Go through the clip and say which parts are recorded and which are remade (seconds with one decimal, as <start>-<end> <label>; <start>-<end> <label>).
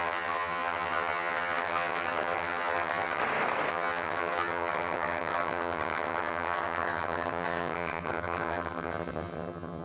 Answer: 0.0-3.2 remade; 3.2-3.7 recorded; 3.7-9.8 remade